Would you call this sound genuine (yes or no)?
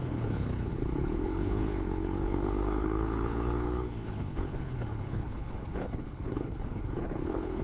no